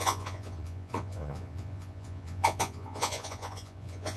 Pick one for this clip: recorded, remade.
remade